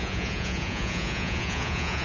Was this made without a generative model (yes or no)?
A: no